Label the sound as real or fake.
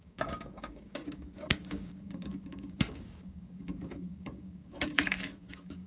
fake